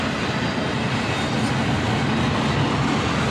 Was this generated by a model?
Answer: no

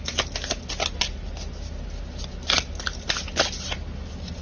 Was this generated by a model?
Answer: no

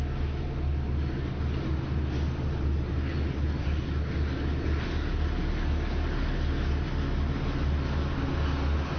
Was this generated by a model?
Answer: no